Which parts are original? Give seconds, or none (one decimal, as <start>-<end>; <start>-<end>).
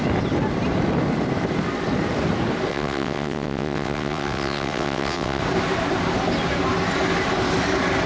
0.0-2.7; 5.4-8.1